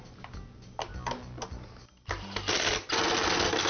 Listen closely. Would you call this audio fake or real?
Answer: real